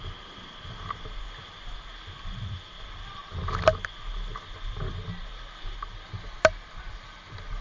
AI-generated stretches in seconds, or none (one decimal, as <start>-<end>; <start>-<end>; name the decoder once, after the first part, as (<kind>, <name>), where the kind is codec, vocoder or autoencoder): none